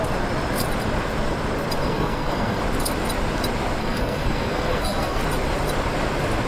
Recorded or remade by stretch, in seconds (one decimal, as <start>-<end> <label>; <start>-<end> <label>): 0.0-1.8 recorded; 1.8-2.6 remade; 2.6-3.8 recorded; 3.8-5.2 remade; 5.2-6.5 recorded